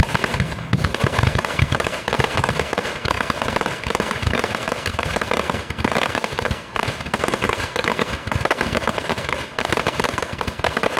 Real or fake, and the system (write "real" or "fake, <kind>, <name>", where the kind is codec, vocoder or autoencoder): fake, codec, SNAC